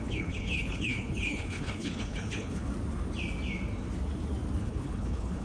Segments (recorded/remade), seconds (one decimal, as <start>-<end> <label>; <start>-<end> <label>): 0.0-2.7 remade; 2.7-4.6 recorded; 4.6-5.4 remade